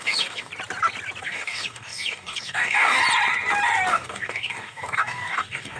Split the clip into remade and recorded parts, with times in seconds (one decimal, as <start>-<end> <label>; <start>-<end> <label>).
0.0-0.5 remade; 0.5-1.2 recorded; 1.2-3.0 remade; 3.0-3.9 recorded; 3.9-5.8 remade